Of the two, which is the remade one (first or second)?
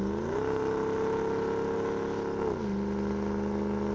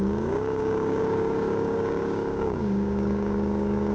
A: second